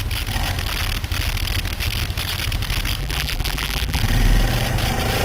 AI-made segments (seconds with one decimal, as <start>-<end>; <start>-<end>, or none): 3.0-4.0